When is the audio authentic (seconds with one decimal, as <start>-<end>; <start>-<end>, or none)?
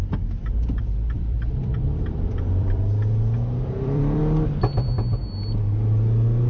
0.0-0.4; 4.2-6.5